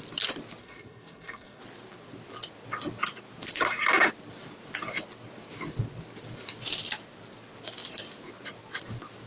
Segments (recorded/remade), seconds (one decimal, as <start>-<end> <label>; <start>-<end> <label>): 0.0-0.6 recorded; 0.6-1.6 remade; 1.6-9.3 recorded